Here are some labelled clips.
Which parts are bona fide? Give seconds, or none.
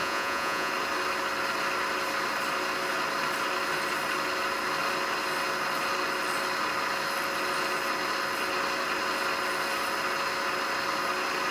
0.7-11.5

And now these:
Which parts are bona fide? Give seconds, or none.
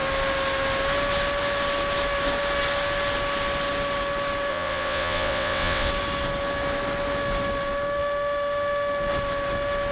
0.0-4.5; 5.9-9.9